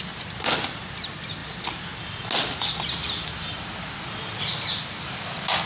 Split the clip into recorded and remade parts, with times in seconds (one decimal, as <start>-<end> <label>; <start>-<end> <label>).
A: 0.0-5.7 recorded